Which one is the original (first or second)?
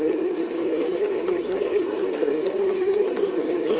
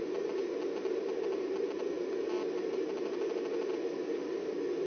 second